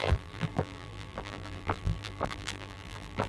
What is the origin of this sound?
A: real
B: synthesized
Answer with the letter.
B